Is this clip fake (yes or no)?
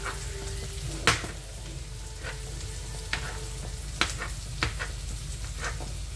no